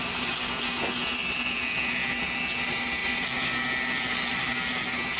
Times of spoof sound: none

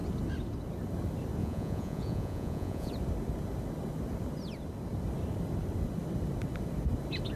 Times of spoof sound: 1.4-2.9 (vocoder, Vocos)

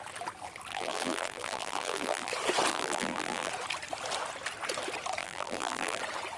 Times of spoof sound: 0.7-2.3 (vocoder, BigVGAN v2); 2.7-3.5; 5.2-6.0

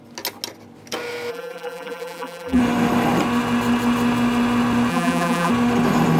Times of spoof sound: 1.3-2.6 (vocoder, BigVGAN v2); 4.9-5.5

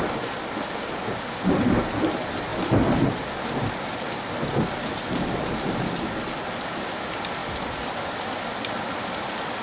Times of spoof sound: none

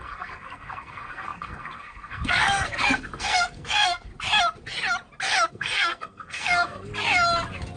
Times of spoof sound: 0.0-4.1 (codec, SNAC); 5.5-6.9

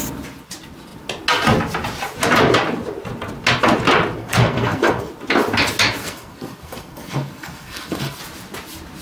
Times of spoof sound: 4.2-5.1 (codec, SNAC); 6.0-8.2

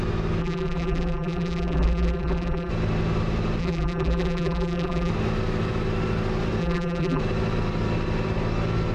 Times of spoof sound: 0.4-2.7 (vocoder, BigVGAN v2); 3.6-5.1; 6.6-7.2